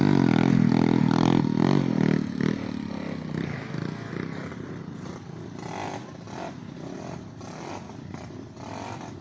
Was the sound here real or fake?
real